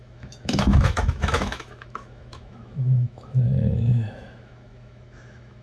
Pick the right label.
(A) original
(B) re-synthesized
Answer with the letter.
B